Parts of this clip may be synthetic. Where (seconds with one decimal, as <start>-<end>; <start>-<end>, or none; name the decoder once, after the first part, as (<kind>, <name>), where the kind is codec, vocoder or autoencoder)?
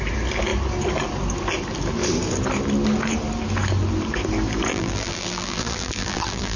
4.7-6.6 (vocoder, BigVGAN v2)